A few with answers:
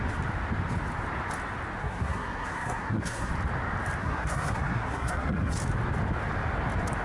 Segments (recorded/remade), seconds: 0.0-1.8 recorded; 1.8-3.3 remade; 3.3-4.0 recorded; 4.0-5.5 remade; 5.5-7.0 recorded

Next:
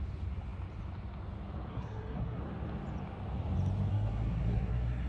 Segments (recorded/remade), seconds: 0.0-1.7 recorded; 1.7-2.4 remade; 2.4-3.9 recorded; 3.9-5.1 remade

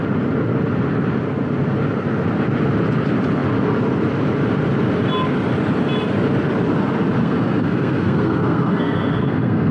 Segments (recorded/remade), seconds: 0.0-7.2 recorded; 7.2-9.7 remade

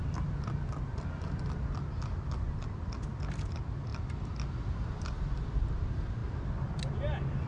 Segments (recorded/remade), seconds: 0.0-7.5 recorded

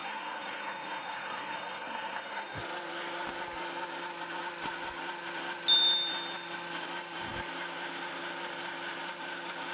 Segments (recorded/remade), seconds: 0.0-2.6 remade; 2.6-9.7 recorded

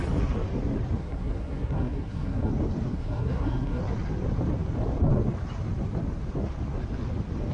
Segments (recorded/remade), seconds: 0.0-1.0 recorded; 1.0-2.5 remade; 2.5-2.9 recorded; 2.9-3.8 remade; 3.8-7.5 recorded

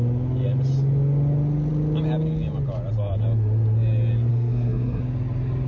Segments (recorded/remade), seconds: 0.0-4.3 recorded; 4.3-5.0 remade; 5.0-5.7 recorded

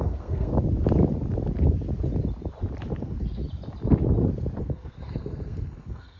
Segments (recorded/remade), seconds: 0.0-0.5 remade; 0.5-3.0 recorded; 3.0-3.4 remade; 3.4-4.6 recorded; 4.6-6.2 remade